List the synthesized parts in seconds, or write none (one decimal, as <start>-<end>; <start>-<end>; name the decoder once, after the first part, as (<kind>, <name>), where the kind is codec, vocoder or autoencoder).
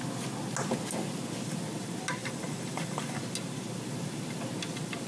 2.2-3.2 (vocoder, BigVGAN v2)